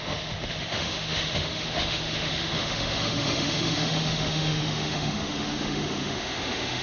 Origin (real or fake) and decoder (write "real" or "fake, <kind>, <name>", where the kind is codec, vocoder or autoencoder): fake, autoencoder, DAC-VAE